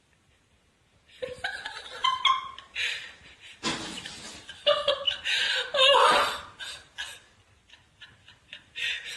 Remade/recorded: recorded